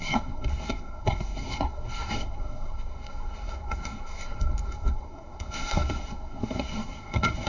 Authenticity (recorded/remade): remade